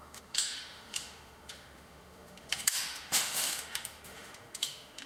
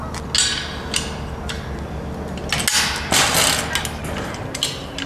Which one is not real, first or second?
first